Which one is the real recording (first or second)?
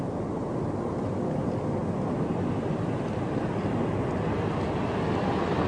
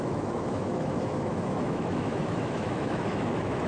first